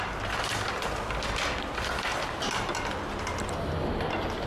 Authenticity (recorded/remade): recorded